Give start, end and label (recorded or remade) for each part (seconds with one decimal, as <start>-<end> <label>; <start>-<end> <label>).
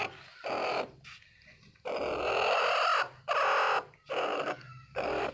0.0-4.3 recorded; 4.3-5.3 remade